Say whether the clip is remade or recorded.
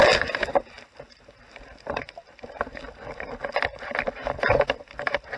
recorded